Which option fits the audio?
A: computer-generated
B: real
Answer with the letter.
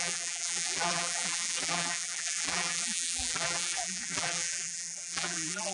A